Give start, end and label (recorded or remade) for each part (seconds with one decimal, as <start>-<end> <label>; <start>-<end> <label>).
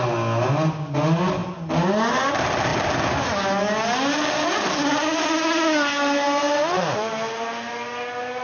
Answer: 0.0-8.4 recorded